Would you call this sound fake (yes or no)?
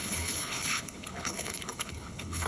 yes